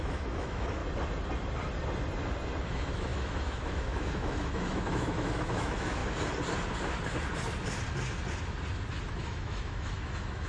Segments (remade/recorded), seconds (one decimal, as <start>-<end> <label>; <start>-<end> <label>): 0.0-0.8 remade; 0.8-2.6 recorded; 2.6-6.0 remade; 6.0-9.1 recorded; 9.1-10.5 remade